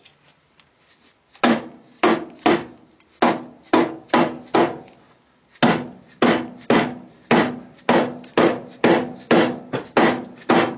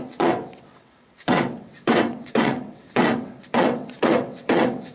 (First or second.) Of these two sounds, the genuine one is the first